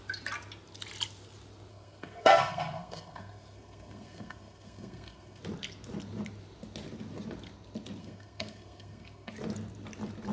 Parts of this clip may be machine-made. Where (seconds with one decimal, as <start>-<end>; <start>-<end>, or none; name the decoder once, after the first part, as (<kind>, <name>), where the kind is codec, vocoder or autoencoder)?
1.7-5.4 (codec, SNAC); 8.0-9.3